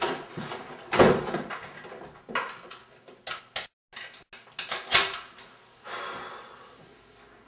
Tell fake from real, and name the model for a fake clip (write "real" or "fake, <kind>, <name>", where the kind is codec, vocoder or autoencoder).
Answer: real